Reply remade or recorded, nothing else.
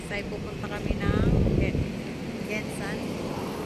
recorded